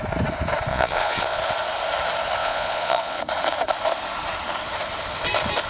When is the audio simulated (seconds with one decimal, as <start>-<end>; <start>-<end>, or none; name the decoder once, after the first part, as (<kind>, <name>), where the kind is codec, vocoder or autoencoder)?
0.7-1.4 (vocoder, Vocos); 2.4-3.2

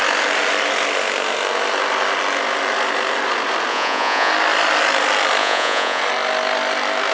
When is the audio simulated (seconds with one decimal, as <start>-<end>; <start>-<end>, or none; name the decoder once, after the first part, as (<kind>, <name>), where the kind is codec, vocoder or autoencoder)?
3.7-4.3 (vocoder, Vocos); 5.4-6.0

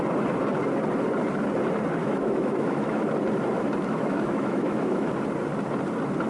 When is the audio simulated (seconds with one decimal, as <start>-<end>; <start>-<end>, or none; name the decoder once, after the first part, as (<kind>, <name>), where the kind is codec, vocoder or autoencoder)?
2.0-3.1 (autoencoder, DAC-VAE); 3.9-5.1